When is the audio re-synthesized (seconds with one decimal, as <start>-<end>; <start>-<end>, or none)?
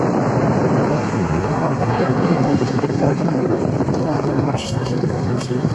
0.9-3.6; 4.0-5.7